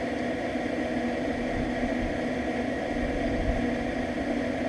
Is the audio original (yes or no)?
yes